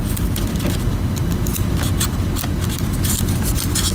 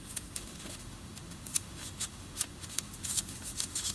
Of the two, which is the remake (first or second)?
second